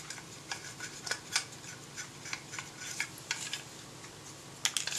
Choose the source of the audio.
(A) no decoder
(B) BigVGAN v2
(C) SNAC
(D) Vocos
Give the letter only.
A